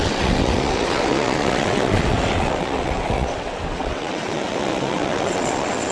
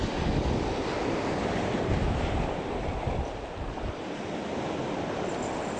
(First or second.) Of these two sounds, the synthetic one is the first